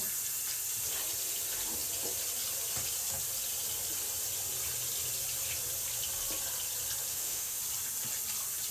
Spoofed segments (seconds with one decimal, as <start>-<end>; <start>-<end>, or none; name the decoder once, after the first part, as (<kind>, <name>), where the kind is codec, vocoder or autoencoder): 7.1-7.6 (autoencoder, DAC-VAE)